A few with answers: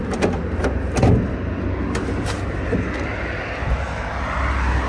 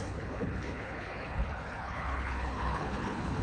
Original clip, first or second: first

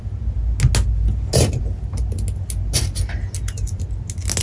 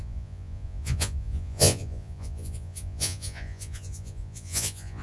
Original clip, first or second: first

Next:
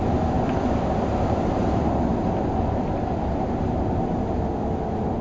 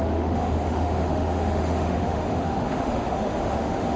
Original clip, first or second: first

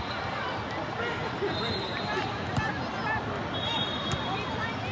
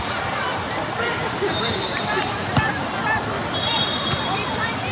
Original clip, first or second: first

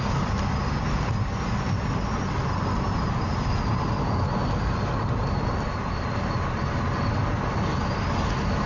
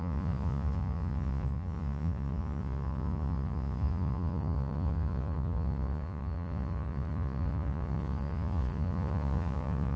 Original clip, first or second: first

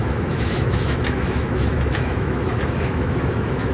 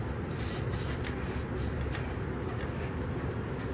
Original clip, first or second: second